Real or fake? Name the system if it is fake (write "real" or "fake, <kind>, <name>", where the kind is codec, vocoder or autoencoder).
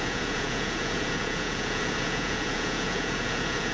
fake, vocoder, Vocos